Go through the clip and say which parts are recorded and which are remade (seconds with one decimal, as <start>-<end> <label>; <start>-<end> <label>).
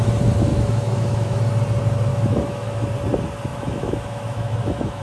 0.0-0.5 recorded; 0.5-1.4 remade; 1.4-2.1 recorded; 2.1-2.9 remade; 2.9-3.5 recorded; 3.5-5.0 remade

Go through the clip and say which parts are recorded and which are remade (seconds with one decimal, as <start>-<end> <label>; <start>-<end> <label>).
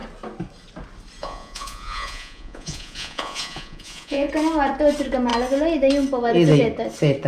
0.0-1.2 recorded; 1.2-4.3 remade; 4.3-7.3 recorded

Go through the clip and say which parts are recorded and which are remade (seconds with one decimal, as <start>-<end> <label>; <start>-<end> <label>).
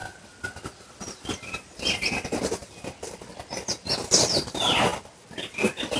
0.0-6.0 recorded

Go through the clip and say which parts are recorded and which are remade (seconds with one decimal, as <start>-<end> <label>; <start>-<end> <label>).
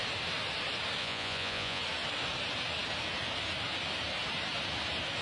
0.0-1.0 recorded; 1.0-1.8 remade; 1.8-5.2 recorded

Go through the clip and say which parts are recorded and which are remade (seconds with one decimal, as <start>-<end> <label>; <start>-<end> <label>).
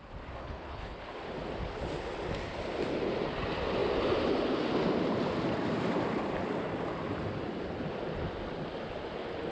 0.0-0.4 recorded; 0.4-1.0 remade; 1.0-9.5 recorded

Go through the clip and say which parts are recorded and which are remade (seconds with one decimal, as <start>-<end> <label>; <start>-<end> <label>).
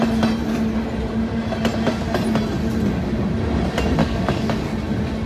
0.0-4.0 recorded; 4.0-4.6 remade; 4.6-5.3 recorded